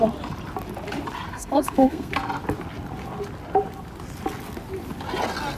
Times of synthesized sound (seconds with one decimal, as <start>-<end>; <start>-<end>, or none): 1.3-2.1